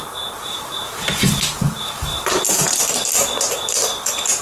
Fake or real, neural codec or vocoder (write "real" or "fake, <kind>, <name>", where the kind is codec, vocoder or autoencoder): fake, vocoder, BigVGAN v2